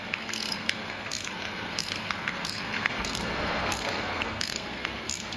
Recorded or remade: remade